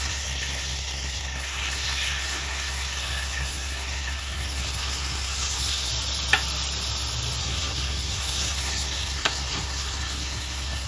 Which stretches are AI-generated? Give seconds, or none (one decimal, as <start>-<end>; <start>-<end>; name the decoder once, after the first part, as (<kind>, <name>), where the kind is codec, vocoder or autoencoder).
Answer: 0.0-5.9 (codec, SNAC); 7.4-10.9